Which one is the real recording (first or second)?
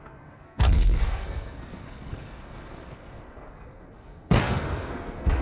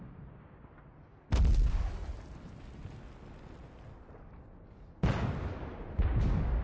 second